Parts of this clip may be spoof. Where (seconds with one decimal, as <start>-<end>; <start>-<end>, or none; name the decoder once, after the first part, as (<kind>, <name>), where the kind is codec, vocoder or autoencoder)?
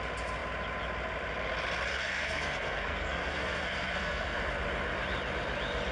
1.9-4.4 (codec, SNAC)